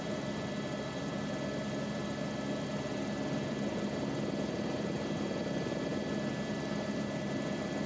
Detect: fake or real real